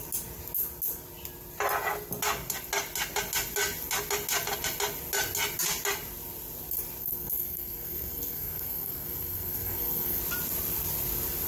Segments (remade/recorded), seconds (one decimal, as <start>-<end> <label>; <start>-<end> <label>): 0.0-7.0 recorded; 7.0-10.2 remade; 10.2-11.5 recorded